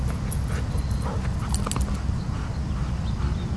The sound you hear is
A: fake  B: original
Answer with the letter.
B